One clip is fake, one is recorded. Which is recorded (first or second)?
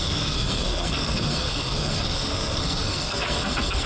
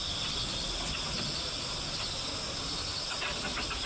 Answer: second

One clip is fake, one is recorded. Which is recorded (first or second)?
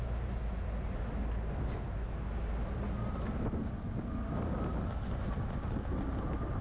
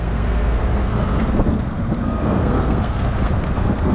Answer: first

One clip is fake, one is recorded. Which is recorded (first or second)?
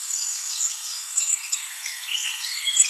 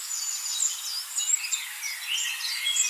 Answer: second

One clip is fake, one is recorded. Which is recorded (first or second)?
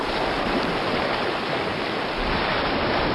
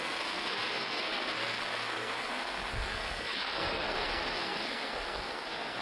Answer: first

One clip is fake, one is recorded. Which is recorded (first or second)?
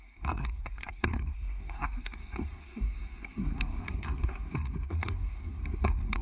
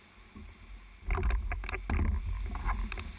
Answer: second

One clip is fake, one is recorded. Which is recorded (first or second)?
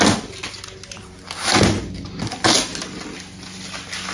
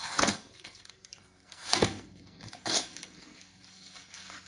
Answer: first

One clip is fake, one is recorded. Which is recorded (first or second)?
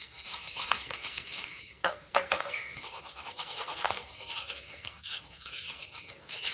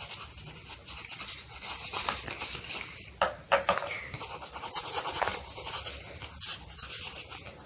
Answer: second